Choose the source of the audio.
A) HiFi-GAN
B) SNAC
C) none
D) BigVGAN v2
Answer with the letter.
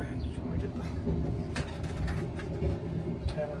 C